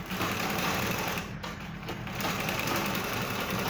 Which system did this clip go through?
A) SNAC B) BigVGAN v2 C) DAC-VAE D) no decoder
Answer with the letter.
B